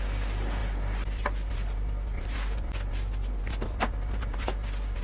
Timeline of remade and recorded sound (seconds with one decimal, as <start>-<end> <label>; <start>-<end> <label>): 0.0-5.0 recorded